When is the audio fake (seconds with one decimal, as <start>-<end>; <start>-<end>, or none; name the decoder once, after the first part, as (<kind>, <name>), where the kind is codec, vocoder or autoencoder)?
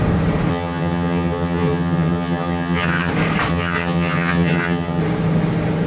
0.5-3.1 (vocoder, HiFi-GAN); 3.5-5.0